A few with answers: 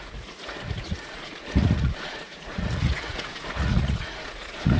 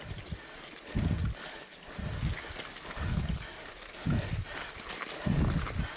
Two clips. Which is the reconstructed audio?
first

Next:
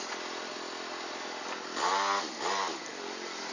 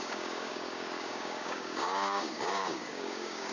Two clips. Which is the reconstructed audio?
second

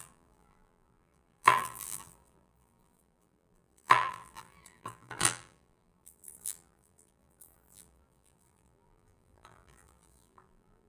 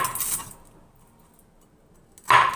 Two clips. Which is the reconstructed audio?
first